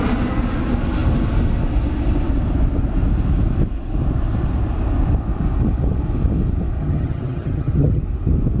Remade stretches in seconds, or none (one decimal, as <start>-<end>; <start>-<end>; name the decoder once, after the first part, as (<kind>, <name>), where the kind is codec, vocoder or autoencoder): 6.8-8.0 (vocoder, HiFi-GAN)